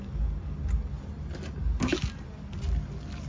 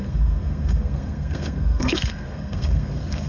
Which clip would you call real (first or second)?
first